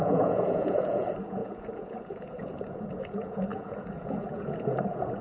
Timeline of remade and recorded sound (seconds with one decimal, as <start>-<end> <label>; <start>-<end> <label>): 0.0-5.2 remade